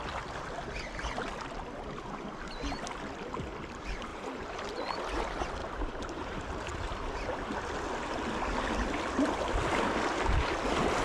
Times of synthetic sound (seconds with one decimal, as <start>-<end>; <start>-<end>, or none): 4.1-4.7; 5.6-6.4